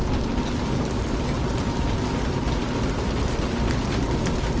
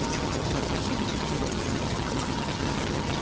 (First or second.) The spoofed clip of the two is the second